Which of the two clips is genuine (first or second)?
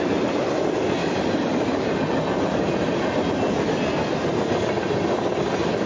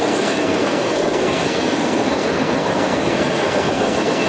first